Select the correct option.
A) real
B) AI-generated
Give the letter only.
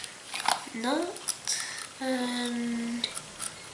A